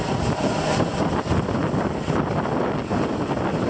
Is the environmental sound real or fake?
real